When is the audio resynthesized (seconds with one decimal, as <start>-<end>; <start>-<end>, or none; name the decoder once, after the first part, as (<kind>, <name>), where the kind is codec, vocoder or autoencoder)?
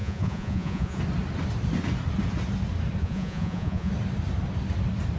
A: 0.0-1.0 (vocoder, Vocos); 3.0-3.9